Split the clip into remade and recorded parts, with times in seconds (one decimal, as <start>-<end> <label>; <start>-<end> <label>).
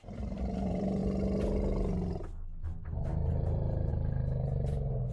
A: 0.0-1.0 remade; 1.0-3.9 recorded; 3.9-5.1 remade